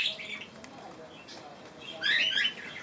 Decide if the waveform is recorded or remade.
recorded